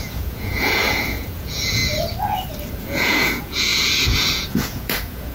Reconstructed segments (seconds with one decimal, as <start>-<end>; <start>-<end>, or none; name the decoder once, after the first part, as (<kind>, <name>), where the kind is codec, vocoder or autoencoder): 0.0-1.8 (vocoder, Vocos); 2.7-5.3

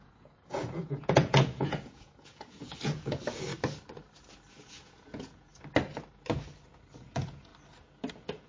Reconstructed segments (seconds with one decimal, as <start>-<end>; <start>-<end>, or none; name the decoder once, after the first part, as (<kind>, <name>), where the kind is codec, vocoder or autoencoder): 0.0-3.5 (vocoder, Vocos); 4.6-5.5; 7.0-7.5; 8.1-8.5